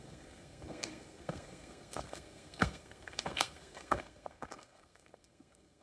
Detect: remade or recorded remade